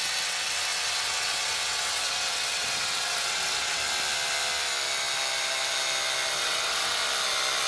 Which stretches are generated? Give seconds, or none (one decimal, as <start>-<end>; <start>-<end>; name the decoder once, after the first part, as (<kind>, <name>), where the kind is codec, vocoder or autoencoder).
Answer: 0.0-3.8 (vocoder, WaveNeXt); 6.4-7.0